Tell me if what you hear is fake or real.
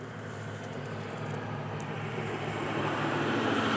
fake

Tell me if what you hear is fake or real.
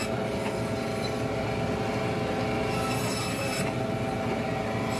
real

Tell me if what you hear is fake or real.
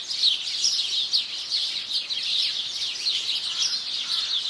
real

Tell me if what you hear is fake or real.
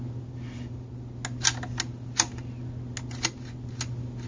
real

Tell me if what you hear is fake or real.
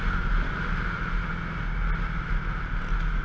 real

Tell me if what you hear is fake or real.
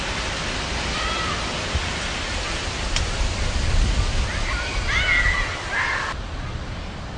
real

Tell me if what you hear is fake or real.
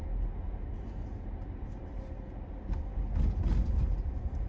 real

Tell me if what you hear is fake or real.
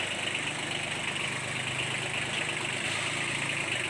real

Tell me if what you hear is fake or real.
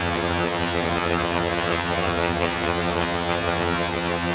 fake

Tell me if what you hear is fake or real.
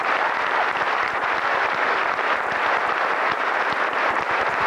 real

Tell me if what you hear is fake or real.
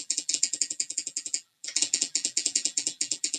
fake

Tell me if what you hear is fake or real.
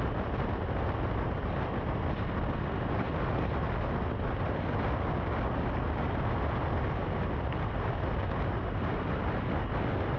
real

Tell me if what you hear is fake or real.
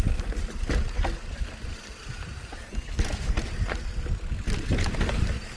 real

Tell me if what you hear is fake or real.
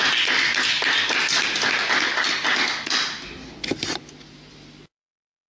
real